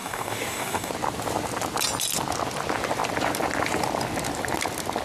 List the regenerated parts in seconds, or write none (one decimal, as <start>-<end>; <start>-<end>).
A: 0.0-0.9